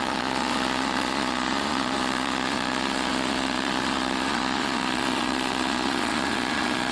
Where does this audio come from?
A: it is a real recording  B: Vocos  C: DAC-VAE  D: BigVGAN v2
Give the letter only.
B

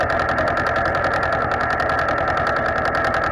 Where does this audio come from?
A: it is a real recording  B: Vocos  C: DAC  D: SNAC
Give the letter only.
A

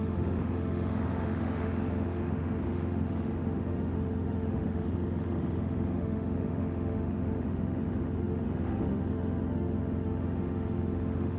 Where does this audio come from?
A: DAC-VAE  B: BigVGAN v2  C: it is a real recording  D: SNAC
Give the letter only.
A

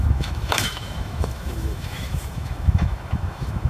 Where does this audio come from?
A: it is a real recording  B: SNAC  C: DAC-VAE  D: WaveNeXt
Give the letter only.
C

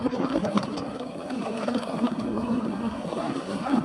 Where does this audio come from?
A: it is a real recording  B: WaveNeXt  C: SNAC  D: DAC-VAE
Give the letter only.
C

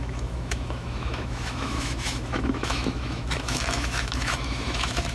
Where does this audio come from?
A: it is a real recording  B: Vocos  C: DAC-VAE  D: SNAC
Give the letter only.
C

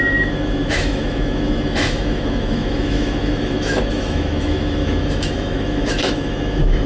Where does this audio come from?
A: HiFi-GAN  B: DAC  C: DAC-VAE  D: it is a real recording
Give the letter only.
C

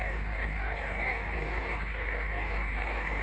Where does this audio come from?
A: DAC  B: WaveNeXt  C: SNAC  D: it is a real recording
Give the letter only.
A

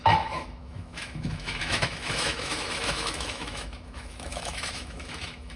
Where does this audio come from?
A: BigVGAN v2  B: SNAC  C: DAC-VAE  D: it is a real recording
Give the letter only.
C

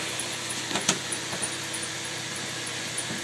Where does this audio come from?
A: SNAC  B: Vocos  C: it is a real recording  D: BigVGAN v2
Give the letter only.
B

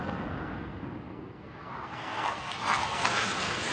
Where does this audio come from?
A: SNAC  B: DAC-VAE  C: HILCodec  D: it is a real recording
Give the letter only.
A